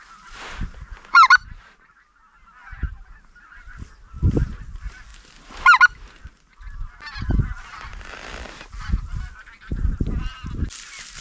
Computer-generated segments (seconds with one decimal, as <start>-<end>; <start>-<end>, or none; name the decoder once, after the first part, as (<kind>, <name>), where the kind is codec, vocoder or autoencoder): none